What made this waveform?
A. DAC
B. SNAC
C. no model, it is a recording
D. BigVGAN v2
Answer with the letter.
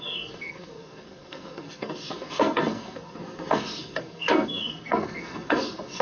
B